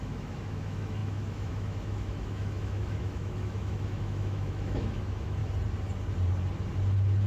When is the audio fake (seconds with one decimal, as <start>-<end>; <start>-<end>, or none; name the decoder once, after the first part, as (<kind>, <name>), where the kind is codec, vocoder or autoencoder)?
0.0-5.4 (autoencoder, DAC-VAE)

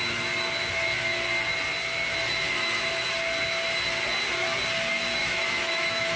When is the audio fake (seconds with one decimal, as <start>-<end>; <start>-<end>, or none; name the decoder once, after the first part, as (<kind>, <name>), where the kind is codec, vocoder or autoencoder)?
5.2-6.2 (autoencoder, DAC-VAE)

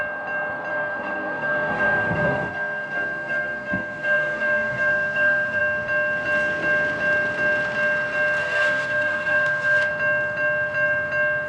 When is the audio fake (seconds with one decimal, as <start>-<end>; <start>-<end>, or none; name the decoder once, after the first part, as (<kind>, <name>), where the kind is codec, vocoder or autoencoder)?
0.7-5.6 (codec, SNAC); 8.4-9.9